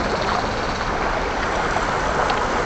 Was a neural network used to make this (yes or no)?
no